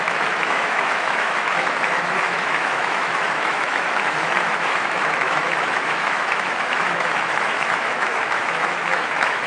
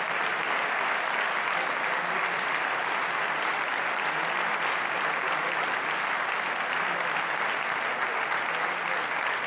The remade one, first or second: first